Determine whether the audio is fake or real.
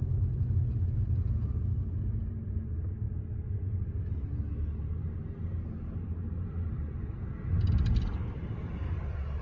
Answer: real